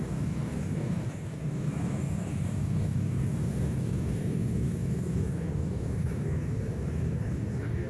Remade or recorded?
remade